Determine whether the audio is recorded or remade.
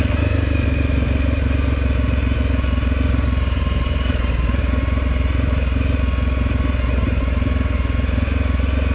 recorded